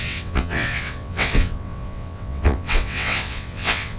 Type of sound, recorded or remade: remade